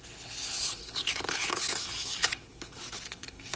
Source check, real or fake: fake